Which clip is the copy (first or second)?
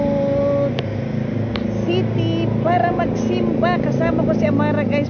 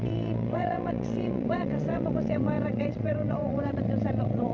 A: second